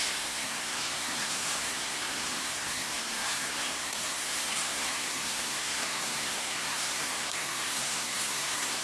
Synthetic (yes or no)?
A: yes